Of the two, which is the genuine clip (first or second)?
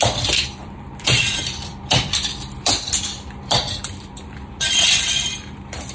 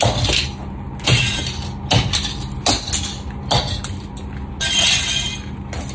second